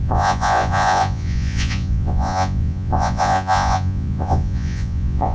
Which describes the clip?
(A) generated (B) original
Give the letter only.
A